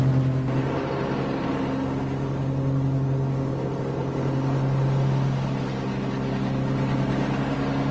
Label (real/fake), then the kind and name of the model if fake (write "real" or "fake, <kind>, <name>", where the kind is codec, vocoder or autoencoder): real